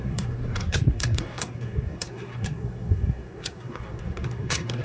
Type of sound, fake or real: fake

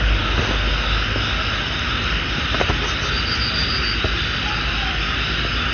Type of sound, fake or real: real